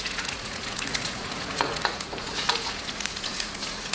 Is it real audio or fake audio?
fake